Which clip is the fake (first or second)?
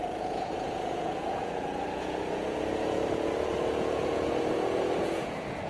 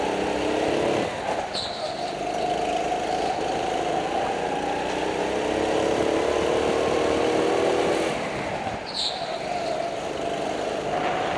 first